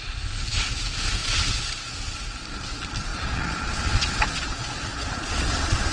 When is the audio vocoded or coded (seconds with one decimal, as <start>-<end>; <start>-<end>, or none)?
3.1-5.9